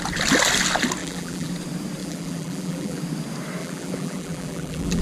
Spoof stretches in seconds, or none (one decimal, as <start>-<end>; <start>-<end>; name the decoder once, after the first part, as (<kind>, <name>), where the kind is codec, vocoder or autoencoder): 1.0-1.5 (vocoder, BigVGAN v2); 2.0-3.0; 3.6-5.0